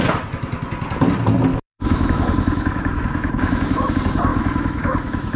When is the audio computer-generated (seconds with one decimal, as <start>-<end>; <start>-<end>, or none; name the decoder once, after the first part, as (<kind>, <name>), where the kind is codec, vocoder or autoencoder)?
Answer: 1.5-3.9 (autoencoder, DAC-VAE); 4.3-5.4